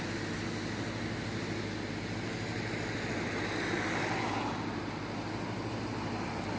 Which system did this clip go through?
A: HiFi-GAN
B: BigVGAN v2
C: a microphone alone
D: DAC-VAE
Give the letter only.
C